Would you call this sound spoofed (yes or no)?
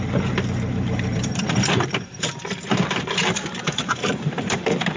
yes